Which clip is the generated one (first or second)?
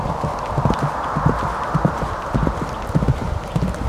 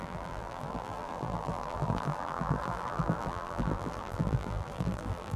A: second